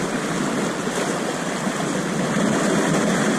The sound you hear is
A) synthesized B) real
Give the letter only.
B